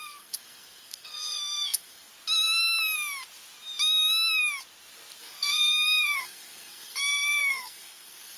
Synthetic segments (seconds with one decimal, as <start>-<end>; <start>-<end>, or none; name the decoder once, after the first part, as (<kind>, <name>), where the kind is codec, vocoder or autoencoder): 0.0-2.1 (codec, SNAC); 5.2-8.4